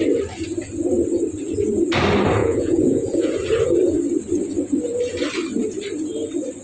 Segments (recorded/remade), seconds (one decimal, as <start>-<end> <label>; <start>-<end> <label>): 0.0-2.4 recorded; 2.4-3.3 remade; 3.3-6.6 recorded